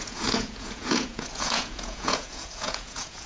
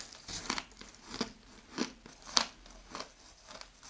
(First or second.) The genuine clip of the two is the second